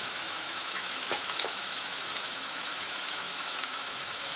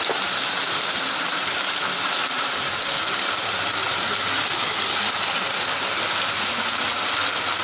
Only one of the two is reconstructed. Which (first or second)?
first